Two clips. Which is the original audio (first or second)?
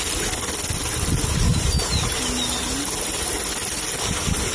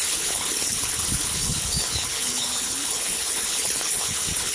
first